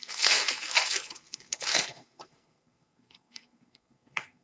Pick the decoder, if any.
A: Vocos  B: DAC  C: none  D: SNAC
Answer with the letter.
D